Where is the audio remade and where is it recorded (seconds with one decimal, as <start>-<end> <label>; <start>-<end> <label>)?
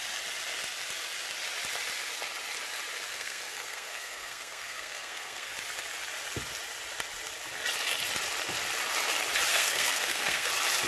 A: 0.0-3.1 recorded; 3.1-5.5 remade; 5.5-9.5 recorded; 9.5-10.5 remade; 10.5-10.9 recorded